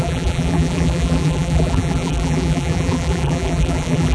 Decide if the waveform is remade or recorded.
remade